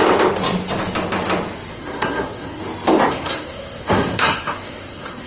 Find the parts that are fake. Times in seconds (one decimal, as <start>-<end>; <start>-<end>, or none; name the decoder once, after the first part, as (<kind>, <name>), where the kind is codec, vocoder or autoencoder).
1.7-2.6 (codec, SNAC); 3.1-5.3